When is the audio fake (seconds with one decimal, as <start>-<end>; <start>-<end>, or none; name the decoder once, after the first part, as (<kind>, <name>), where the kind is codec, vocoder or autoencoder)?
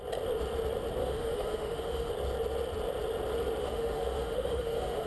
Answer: 1.0-2.1 (autoencoder, DAC-VAE); 3.6-5.1